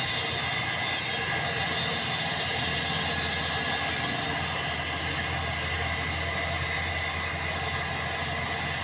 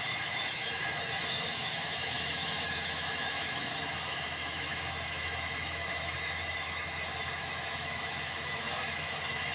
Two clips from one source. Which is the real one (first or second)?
first